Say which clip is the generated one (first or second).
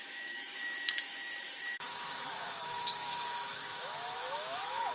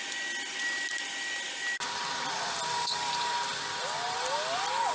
first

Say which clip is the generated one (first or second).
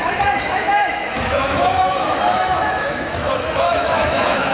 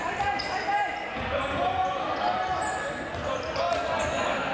first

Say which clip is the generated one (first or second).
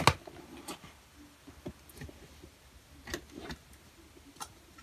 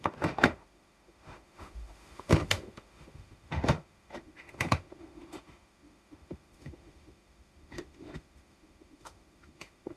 second